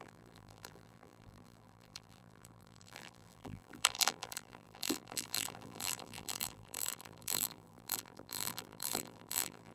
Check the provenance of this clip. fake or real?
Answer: fake